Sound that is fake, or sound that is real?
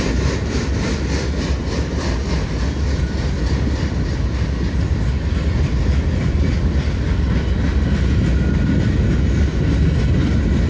real